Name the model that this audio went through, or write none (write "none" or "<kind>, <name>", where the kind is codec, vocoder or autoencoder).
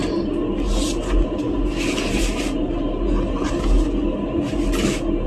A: none